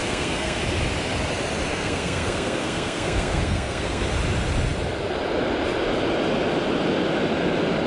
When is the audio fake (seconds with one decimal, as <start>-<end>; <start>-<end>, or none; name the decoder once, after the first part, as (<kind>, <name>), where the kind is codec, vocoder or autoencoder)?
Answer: 0.0-0.6 (codec, SNAC); 1.7-4.0